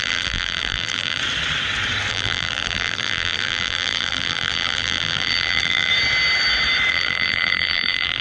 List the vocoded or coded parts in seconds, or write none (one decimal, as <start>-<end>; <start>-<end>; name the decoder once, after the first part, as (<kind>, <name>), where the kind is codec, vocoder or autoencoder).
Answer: 0.0-1.2 (vocoder, BigVGAN v2); 2.1-5.9; 6.9-8.2